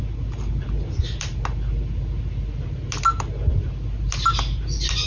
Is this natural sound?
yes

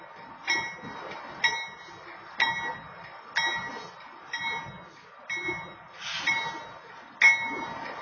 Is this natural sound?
yes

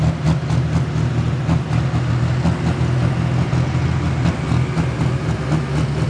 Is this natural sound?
yes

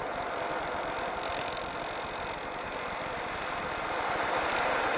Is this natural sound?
yes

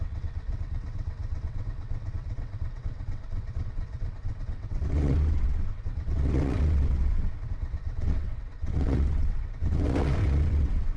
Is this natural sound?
no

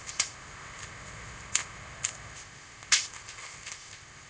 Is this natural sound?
no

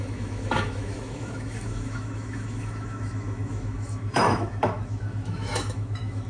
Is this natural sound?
no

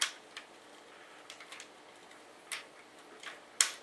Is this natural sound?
yes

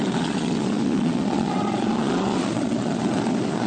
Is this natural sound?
no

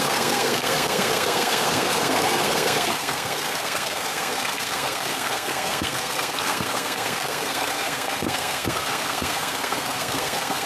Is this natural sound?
no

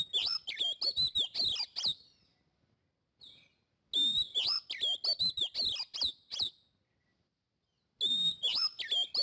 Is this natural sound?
yes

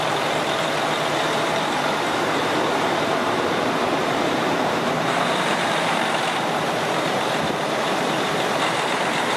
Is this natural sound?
no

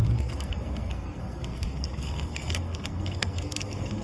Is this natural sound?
no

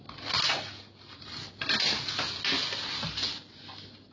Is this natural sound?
yes